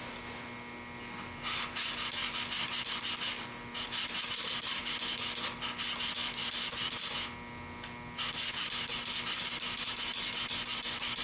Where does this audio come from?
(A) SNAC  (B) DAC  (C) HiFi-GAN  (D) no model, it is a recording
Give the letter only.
D